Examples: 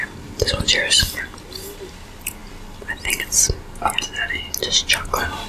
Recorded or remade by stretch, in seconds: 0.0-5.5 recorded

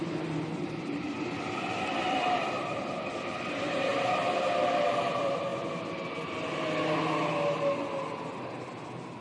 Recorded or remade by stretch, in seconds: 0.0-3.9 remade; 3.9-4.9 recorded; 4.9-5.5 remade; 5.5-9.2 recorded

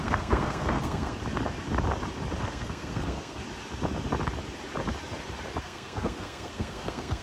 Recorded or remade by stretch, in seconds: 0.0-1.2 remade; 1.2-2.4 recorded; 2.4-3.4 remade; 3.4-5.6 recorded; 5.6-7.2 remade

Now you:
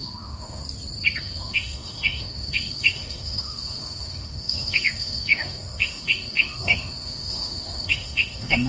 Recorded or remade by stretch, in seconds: 0.0-0.6 remade; 0.6-1.2 recorded; 1.2-8.7 remade

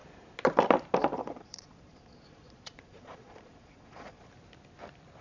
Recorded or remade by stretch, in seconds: 0.0-1.2 recorded; 1.2-4.3 remade; 4.3-5.2 recorded

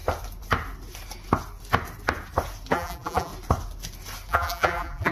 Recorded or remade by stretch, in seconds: 0.0-2.7 recorded; 2.7-3.3 remade; 3.3-4.3 recorded; 4.3-5.1 remade

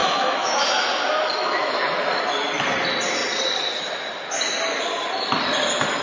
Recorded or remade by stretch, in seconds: 0.0-1.8 remade; 1.8-6.0 recorded